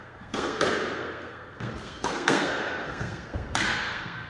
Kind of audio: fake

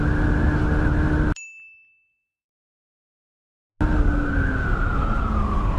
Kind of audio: real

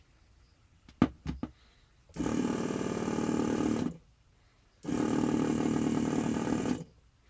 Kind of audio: real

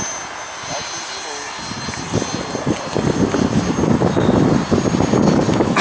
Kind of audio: real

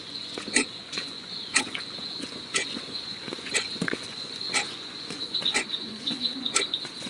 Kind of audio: fake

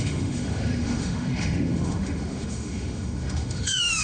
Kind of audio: fake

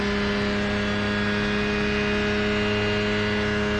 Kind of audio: real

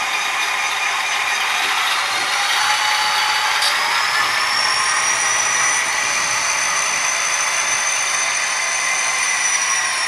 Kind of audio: fake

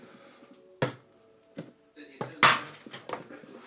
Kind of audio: real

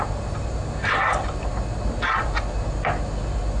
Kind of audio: real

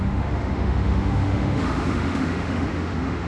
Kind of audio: fake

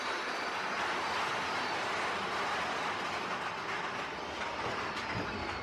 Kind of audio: real